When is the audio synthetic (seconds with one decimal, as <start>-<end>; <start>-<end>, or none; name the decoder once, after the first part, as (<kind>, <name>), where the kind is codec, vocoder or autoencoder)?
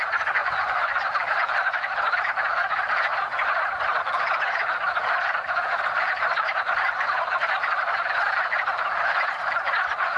0.4-1.0 (vocoder, Vocos)